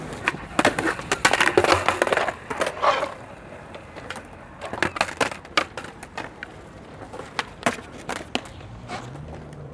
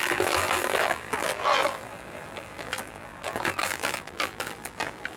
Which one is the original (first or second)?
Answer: first